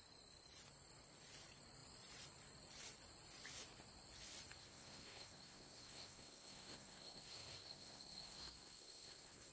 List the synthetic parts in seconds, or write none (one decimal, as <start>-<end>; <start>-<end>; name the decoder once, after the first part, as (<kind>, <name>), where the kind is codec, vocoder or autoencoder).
4.6-9.5 (codec, SNAC)

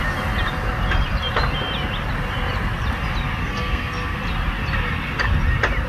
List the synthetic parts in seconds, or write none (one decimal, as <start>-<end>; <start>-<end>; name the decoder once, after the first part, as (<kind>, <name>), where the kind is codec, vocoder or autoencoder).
3.4-4.2 (codec, SNAC)

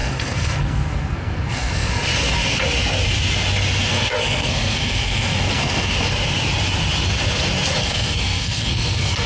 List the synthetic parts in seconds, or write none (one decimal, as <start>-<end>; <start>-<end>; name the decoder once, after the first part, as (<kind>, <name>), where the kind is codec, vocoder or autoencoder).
0.0-1.9 (codec, SNAC); 3.9-5.9; 7.8-9.3

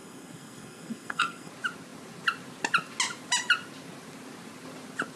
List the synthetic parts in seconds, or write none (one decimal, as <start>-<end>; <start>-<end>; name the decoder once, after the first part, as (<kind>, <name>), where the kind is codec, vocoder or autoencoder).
0.0-1.5 (codec, SNAC)

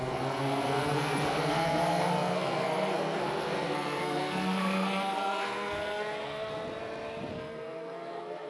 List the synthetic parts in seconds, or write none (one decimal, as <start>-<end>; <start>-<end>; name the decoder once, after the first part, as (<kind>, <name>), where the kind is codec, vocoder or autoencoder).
0.0-6.5 (codec, SNAC); 7.3-8.5

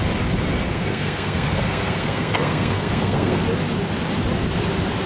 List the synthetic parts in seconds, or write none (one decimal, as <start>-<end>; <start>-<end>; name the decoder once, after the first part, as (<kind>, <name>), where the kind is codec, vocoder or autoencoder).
0.7-3.4 (codec, SNAC)

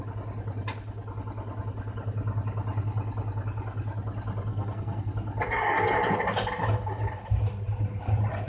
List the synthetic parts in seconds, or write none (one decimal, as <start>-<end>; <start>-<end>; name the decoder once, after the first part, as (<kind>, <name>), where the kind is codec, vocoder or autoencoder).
4.5-5.1 (codec, SNAC)